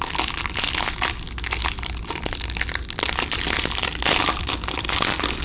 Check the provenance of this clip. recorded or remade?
recorded